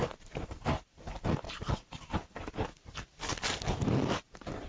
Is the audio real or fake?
fake